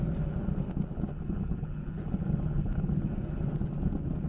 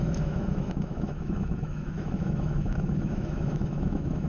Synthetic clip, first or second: second